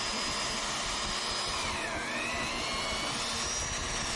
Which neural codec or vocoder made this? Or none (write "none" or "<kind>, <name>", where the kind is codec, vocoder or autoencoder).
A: none